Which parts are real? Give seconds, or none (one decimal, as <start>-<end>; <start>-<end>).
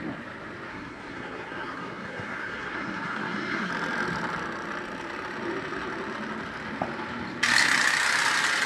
0.0-0.7; 3.7-8.7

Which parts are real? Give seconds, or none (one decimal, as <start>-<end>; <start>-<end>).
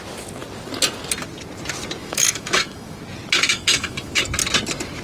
0.0-2.0; 3.0-3.5; 4.2-5.0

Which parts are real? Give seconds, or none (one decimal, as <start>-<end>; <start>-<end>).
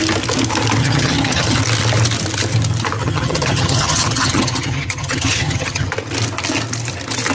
0.0-0.8; 1.6-3.0; 5.9-7.3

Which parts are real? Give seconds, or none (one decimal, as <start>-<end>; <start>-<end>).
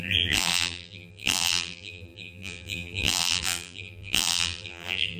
none